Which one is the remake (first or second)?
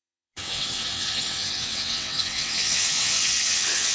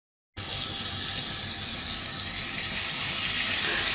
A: first